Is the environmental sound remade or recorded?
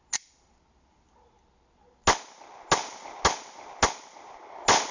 recorded